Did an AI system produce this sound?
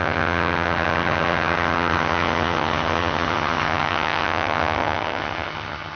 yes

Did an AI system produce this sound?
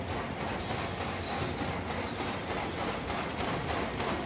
no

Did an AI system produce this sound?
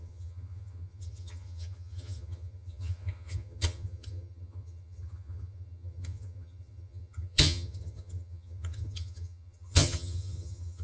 yes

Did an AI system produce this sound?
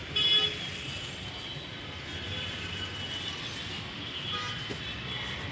no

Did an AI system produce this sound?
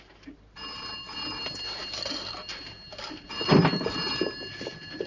no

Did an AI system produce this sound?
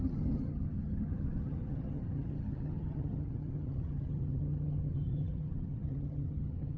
yes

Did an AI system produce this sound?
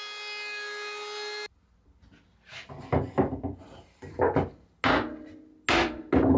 no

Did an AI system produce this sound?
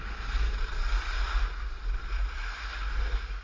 no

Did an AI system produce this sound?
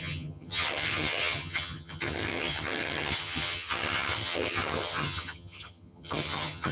yes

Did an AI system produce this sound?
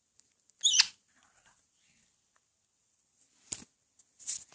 no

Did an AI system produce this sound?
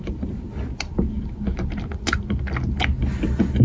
no